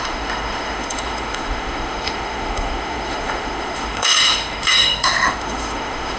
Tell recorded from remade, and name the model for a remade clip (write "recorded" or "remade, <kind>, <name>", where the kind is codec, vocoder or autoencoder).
remade, autoencoder, DAC-VAE